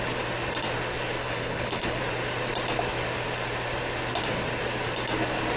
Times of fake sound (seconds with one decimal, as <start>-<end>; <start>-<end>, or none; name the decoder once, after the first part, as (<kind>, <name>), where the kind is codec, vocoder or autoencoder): 1.2-2.0 (codec, HILCodec)